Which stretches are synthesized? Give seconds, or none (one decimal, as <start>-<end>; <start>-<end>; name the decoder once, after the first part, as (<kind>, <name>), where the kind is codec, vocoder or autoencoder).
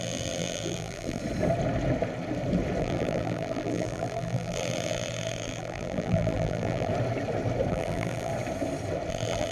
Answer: 0.0-1.2 (vocoder, BigVGAN v2); 2.8-6.9; 7.7-8.3; 9.1-9.5